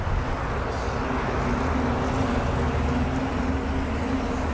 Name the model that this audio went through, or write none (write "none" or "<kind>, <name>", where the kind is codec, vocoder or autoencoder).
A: none